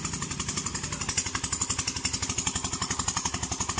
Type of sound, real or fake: real